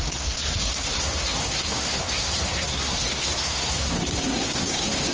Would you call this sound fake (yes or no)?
yes